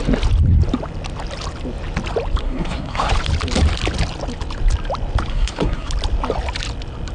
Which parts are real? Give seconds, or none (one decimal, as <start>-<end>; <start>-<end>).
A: 0.0-2.4; 3.1-5.3; 5.9-7.1